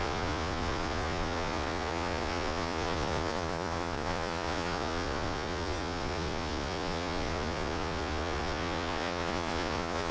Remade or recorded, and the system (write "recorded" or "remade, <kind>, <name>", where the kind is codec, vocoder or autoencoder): remade, vocoder, Vocos